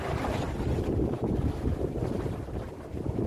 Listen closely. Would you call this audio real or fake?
real